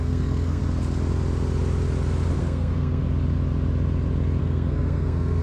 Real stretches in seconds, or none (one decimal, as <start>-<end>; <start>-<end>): 0.6-2.4; 3.0-4.4

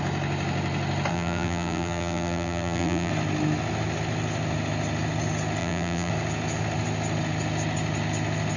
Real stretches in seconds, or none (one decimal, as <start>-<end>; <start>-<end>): 0.0-1.1; 3.1-5.6; 6.1-8.6

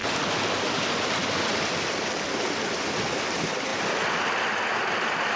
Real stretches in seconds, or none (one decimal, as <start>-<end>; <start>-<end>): 0.0-5.4

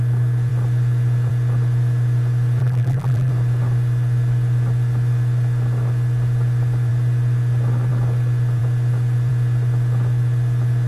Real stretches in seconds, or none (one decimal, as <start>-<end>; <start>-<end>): 0.0-2.6; 3.3-10.9

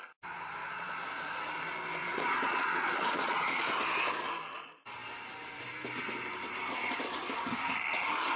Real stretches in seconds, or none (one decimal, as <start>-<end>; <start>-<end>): 0.0-0.6; 1.4-2.0; 3.6-8.4

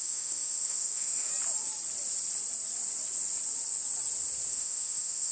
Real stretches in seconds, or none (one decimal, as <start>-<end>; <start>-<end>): 1.3-4.5

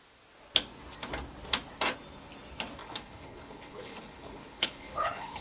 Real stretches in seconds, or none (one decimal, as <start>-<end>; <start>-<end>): 0.0-2.8